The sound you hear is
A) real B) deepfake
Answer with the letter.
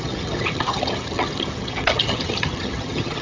B